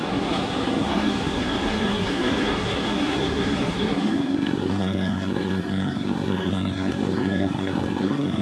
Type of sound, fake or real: fake